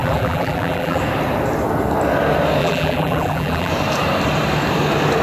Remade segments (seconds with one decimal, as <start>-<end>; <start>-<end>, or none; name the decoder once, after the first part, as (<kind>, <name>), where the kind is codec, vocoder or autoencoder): 0.0-1.0 (vocoder, BigVGAN v2); 2.6-3.7